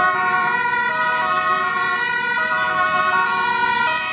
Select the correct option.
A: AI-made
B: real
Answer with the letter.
B